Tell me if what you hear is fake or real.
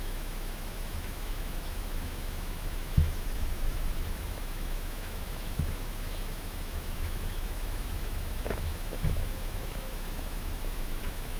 fake